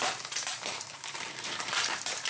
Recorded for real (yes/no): no